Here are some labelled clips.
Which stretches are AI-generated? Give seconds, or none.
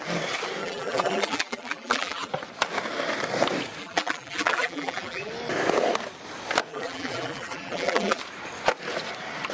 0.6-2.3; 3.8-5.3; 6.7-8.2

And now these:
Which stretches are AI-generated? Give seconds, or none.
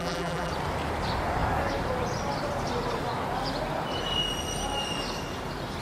0.0-0.5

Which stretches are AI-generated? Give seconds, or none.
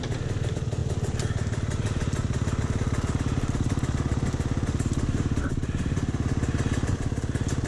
none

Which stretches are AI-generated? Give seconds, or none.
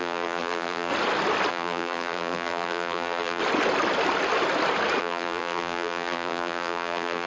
0.0-0.9; 1.5-3.4; 5.0-7.3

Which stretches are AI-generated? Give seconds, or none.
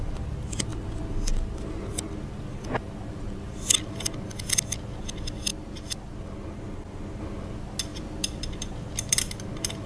5.5-7.2; 7.9-9.3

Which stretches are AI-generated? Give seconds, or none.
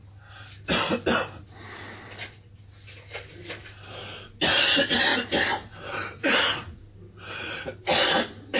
none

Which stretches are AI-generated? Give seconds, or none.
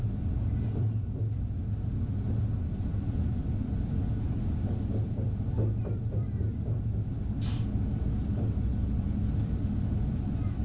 0.0-1.9; 2.6-10.6